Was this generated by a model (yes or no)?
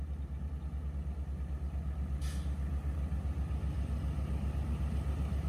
no